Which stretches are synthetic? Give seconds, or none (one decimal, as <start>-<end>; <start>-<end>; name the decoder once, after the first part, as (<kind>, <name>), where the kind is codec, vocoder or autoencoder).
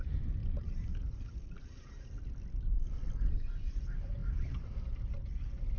0.4-1.9 (vocoder, BigVGAN v2)